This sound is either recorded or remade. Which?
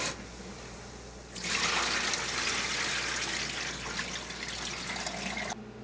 recorded